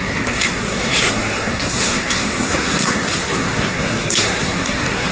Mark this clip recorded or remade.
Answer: remade